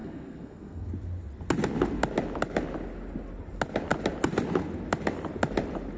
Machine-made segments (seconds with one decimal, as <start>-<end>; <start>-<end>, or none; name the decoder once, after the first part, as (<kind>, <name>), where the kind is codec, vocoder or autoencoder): 0.0-0.9 (codec, SNAC)

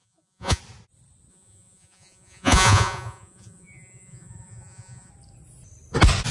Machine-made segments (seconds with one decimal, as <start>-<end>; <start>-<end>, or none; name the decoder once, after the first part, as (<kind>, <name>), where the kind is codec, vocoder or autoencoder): 0.0-0.6 (vocoder, Vocos); 1.3-5.1

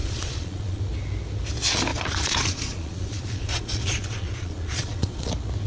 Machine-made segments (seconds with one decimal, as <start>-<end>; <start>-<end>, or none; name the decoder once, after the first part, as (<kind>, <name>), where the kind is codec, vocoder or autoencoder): 0.0-0.8 (vocoder, Vocos); 1.9-5.3

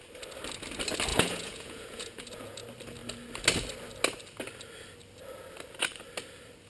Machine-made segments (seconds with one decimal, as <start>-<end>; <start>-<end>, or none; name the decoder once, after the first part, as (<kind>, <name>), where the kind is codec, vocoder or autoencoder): 1.1-2.6 (vocoder, Vocos)

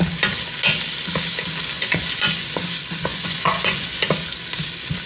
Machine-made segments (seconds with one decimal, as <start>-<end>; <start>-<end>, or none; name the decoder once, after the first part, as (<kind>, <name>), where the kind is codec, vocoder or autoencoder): 1.7-2.6 (vocoder, Vocos); 3.1-4.0